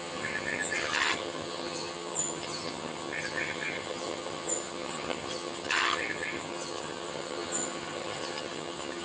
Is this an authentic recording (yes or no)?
no